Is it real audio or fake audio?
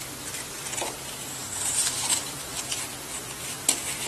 fake